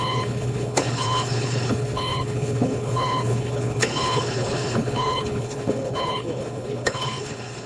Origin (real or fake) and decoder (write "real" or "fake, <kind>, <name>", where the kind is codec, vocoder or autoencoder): fake, codec, HILCodec